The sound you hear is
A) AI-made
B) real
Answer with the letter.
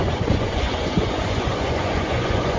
A